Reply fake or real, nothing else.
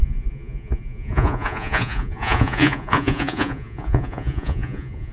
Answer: fake